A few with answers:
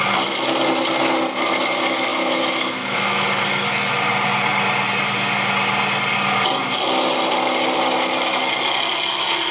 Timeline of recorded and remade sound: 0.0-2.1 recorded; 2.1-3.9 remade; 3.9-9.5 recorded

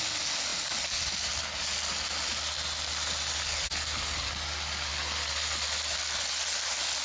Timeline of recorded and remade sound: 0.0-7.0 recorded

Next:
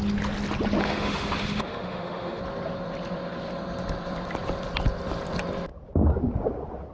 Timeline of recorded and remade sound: 0.0-0.8 recorded; 0.8-2.4 remade; 2.4-6.9 recorded

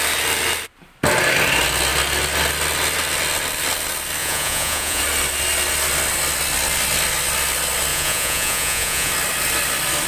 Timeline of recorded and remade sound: 0.0-4.2 recorded; 4.2-5.0 remade; 5.0-7.9 recorded; 7.9-9.1 remade; 9.1-10.1 recorded